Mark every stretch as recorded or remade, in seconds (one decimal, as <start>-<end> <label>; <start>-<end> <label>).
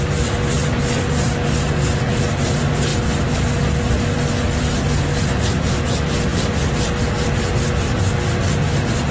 0.0-9.1 recorded